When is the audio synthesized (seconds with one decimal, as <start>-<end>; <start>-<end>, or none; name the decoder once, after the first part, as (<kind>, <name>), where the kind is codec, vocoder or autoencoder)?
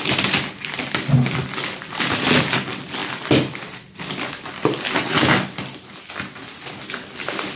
3.0-4.3 (vocoder, BigVGAN v2)